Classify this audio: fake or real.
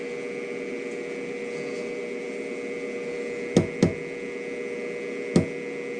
real